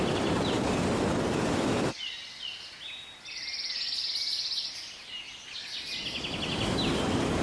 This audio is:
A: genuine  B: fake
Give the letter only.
A